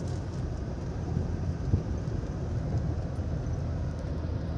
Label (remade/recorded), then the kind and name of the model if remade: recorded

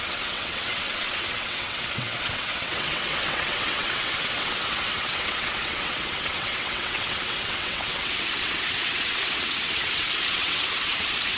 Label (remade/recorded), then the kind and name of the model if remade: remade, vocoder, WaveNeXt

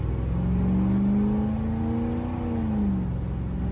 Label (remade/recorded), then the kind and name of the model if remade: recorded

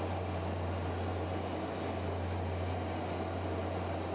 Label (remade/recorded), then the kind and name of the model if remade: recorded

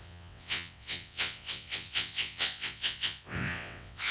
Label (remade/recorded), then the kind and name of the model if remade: remade, vocoder, WaveNeXt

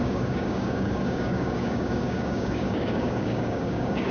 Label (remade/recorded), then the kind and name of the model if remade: remade, codec, DAC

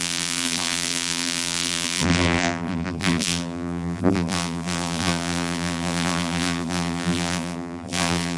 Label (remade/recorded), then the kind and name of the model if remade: remade, vocoder, BigVGAN v2